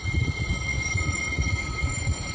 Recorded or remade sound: remade